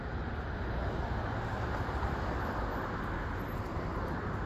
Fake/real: real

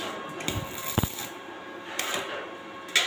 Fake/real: real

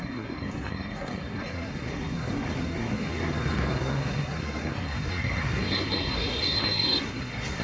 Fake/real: fake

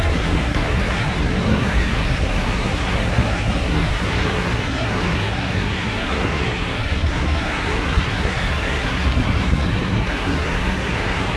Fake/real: fake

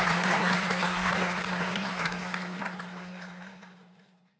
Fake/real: fake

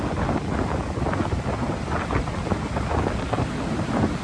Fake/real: real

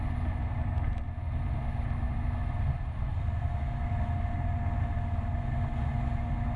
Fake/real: real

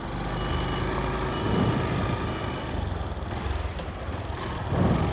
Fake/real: real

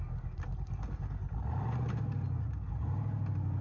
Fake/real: real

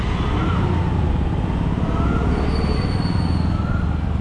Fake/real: real